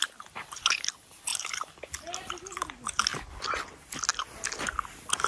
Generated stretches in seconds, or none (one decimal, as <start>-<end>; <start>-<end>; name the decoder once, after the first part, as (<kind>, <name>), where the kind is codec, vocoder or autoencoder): none